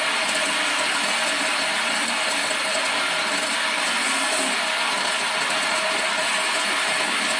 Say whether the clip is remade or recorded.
recorded